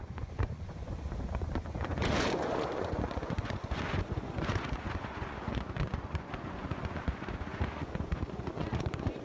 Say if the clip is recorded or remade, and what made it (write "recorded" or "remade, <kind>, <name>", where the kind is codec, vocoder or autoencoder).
remade, vocoder, Vocos